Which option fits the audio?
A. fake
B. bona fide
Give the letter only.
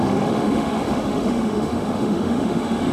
A